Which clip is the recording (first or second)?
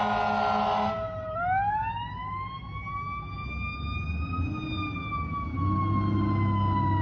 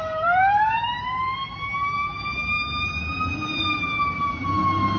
first